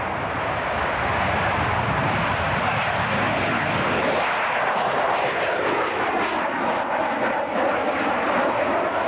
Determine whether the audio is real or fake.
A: real